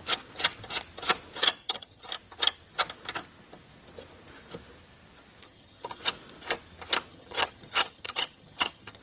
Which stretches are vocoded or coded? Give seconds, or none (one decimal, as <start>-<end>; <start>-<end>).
1.6-2.1; 5.4-6.0; 7.1-9.0